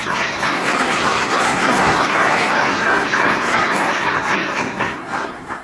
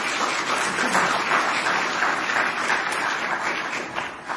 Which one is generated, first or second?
first